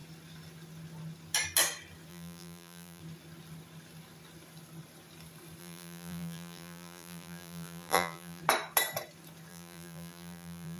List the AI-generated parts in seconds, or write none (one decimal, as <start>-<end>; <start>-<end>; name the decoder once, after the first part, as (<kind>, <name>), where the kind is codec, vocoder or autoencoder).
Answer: 2.1-3.0 (vocoder, BigVGAN v2); 5.6-8.4; 9.5-10.8